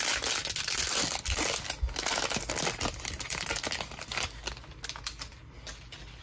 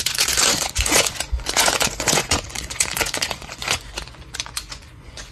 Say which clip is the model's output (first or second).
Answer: second